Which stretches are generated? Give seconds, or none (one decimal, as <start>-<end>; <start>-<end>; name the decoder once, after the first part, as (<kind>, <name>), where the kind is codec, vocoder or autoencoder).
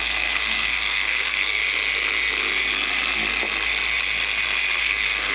0.0-1.6 (codec, SNAC); 4.8-5.3